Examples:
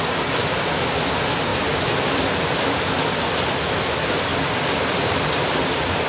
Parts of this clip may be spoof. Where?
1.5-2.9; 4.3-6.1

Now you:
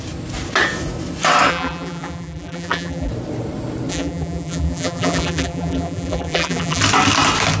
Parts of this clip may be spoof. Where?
1.5-3.1; 3.9-6.8

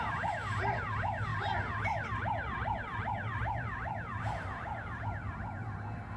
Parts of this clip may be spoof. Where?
1.3-5.0

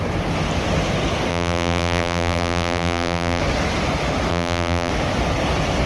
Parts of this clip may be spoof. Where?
1.3-3.4; 4.3-4.9